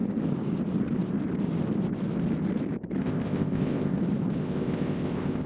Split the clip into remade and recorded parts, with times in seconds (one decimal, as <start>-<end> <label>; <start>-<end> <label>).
0.0-3.0 recorded; 3.0-4.0 remade; 4.0-4.4 recorded; 4.4-5.5 remade